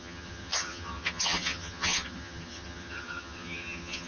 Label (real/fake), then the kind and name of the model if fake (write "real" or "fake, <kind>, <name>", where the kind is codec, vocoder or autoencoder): fake, vocoder, HiFi-GAN